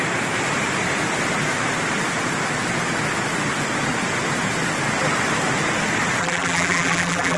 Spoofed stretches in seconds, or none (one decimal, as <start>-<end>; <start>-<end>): 6.2-7.4